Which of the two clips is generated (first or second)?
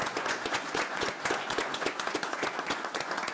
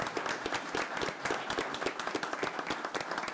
first